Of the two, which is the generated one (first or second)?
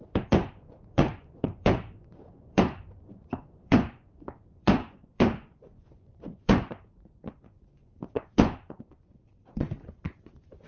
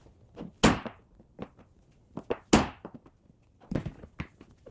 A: first